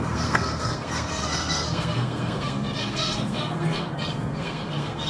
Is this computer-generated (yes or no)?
yes